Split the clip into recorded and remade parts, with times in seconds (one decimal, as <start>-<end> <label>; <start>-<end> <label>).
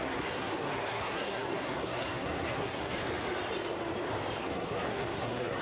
0.0-3.0 remade; 3.0-4.4 recorded; 4.4-5.6 remade